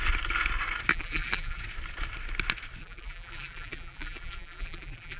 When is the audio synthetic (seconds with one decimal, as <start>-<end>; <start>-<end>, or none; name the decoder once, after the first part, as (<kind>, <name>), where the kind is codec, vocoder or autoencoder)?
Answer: 0.9-1.6 (vocoder, BigVGAN v2); 2.8-5.2